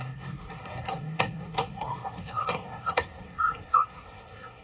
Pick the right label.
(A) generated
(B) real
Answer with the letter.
A